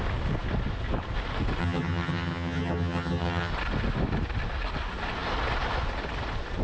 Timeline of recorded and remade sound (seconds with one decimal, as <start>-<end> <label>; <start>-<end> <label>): 0.0-1.6 recorded; 1.6-3.5 remade; 3.5-6.6 recorded